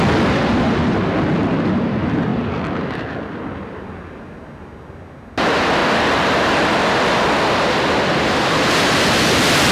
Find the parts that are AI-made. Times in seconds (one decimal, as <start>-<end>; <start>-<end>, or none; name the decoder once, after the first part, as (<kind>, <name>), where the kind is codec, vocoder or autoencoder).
none